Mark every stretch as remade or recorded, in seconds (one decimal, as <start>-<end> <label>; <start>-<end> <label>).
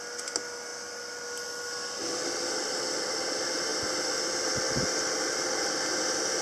0.0-0.7 recorded; 0.7-3.0 remade; 3.0-6.4 recorded